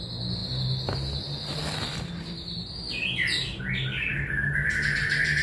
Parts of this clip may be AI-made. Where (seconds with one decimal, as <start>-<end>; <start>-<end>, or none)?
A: 4.1-4.7